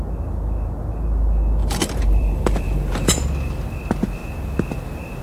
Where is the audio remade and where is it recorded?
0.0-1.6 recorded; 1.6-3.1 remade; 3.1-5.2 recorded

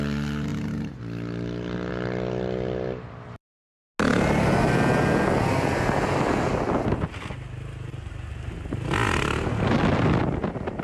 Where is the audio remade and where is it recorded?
0.0-10.8 recorded